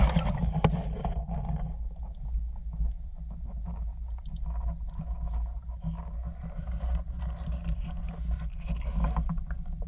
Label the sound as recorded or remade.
recorded